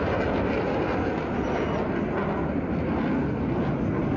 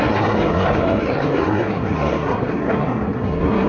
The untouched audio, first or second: first